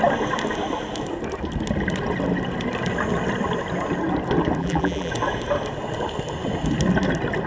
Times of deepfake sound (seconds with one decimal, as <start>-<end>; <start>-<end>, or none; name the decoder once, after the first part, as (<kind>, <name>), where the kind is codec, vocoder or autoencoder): 4.6-5.1 (vocoder, BigVGAN v2)